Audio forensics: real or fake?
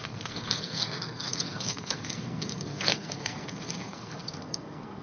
fake